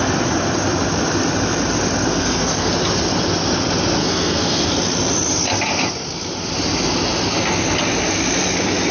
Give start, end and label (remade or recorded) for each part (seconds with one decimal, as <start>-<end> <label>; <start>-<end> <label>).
0.0-2.1 recorded; 2.1-2.7 remade; 2.7-4.0 recorded; 4.0-4.7 remade; 4.7-8.9 recorded